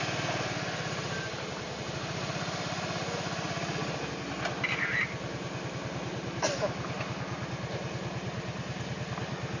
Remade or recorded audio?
recorded